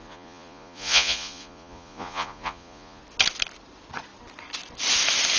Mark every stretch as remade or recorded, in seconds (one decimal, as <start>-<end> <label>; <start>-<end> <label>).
0.0-3.0 remade; 3.0-5.4 recorded